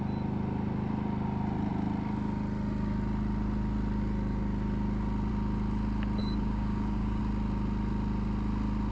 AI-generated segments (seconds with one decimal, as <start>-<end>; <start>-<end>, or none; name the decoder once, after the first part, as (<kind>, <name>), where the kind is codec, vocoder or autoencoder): 6.2-7.2 (codec, DAC)